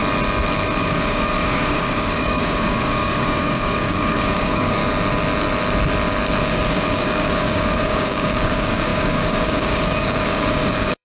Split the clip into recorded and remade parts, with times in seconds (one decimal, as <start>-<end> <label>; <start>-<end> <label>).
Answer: 0.0-0.8 recorded; 0.8-4.8 remade; 4.8-6.4 recorded; 6.4-11.0 remade